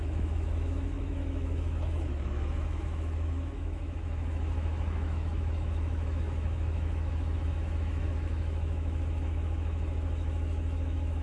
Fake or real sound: fake